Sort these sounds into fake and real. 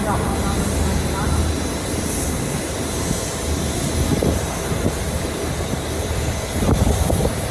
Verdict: real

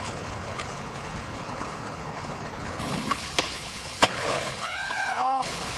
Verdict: fake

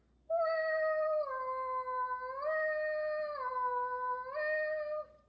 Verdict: real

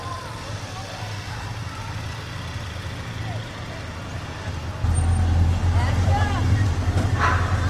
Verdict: real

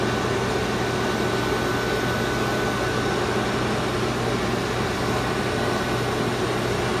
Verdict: real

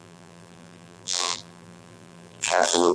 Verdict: fake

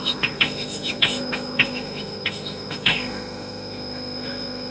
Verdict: fake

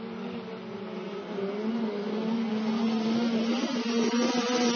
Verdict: real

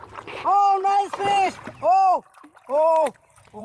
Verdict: fake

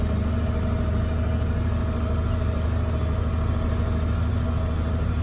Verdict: real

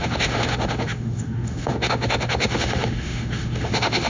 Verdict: fake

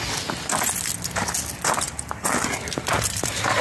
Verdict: real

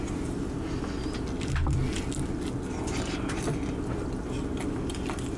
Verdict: real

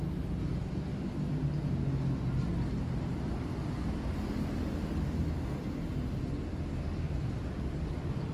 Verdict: real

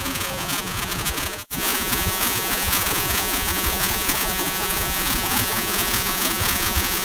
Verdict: fake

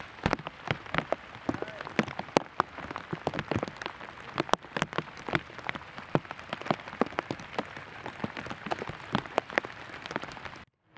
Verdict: real